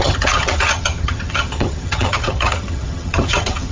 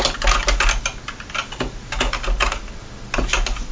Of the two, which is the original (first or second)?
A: second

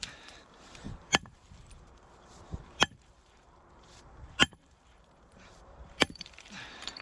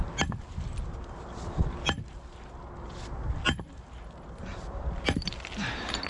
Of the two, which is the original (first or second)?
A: second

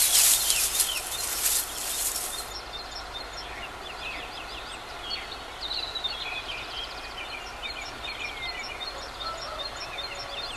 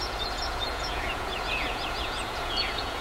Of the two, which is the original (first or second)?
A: first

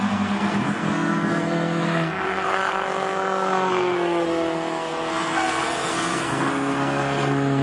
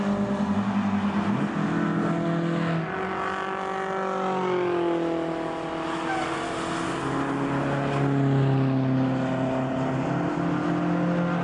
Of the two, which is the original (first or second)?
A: second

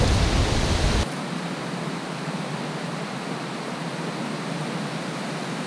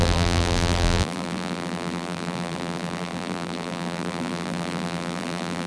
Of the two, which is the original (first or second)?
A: first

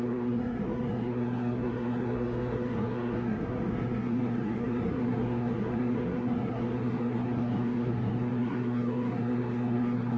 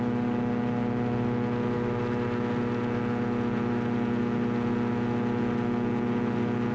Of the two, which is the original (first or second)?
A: second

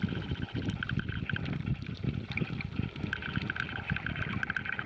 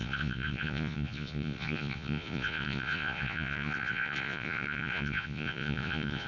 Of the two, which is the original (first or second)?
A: first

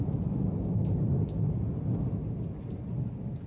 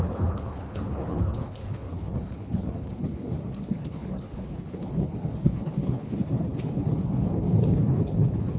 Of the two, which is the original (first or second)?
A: first